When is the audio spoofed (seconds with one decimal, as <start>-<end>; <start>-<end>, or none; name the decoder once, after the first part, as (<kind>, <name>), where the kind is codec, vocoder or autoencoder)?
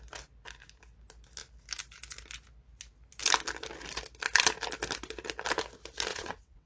6.1-6.7 (vocoder, WaveNeXt)